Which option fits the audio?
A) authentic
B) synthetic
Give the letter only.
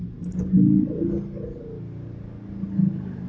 A